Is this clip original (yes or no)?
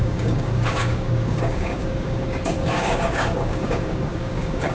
no